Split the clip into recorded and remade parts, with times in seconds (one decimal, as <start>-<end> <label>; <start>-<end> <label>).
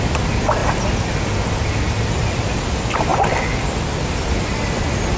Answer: 0.0-5.2 recorded